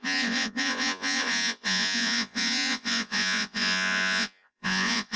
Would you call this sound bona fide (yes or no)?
no